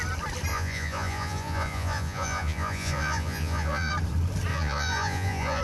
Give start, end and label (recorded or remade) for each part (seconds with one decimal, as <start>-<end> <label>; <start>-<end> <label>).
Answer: 0.0-0.5 recorded; 0.5-3.9 remade; 3.9-4.5 recorded; 4.5-5.6 remade